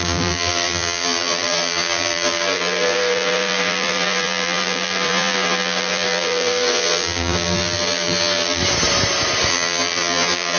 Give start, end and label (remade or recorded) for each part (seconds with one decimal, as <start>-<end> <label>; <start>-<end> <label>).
0.0-8.6 remade; 8.6-9.5 recorded; 9.5-10.6 remade